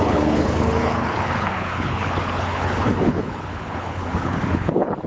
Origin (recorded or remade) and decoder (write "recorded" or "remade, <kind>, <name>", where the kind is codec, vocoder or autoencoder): remade, codec, HILCodec